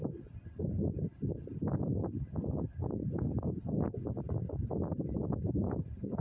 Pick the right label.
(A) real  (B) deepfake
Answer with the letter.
A